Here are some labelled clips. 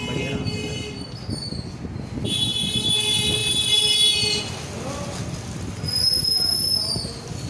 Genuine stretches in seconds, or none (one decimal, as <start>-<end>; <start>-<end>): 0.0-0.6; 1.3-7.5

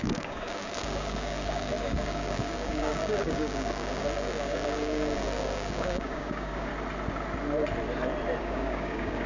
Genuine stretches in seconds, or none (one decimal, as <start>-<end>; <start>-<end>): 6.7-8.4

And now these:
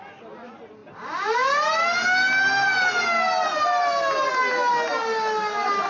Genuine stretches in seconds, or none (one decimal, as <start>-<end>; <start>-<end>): 0.0-5.9